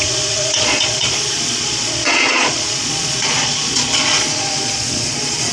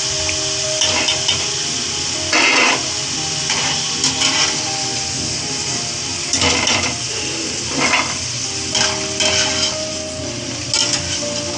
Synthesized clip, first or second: first